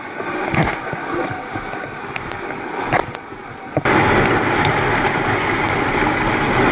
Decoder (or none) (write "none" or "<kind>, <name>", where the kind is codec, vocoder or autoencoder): none